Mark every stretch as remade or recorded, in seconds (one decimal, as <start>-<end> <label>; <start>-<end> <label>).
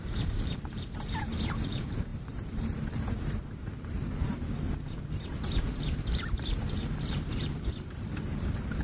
0.0-8.8 remade